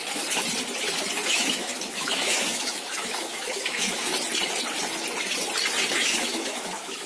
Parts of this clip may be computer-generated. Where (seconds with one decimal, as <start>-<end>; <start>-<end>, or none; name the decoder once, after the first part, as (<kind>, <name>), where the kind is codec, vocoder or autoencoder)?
1.3-4.1 (autoencoder, DAC-VAE); 5.9-7.1